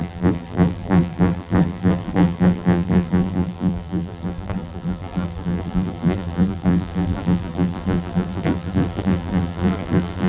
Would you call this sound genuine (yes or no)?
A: no